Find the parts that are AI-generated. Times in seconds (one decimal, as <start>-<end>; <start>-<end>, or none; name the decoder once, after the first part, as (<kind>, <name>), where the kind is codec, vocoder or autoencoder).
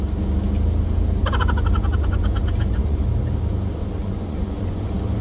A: 1.2-3.0 (vocoder, Vocos); 4.0-4.8